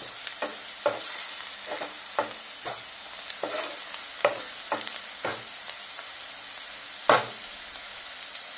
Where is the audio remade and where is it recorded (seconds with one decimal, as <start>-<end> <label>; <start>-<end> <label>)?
0.0-5.3 recorded; 5.3-6.6 remade; 6.6-8.6 recorded